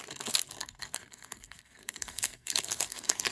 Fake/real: fake